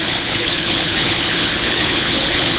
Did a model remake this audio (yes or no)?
yes